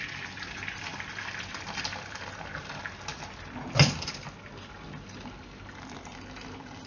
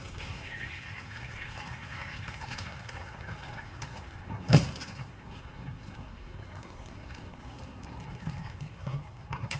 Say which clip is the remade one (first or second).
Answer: second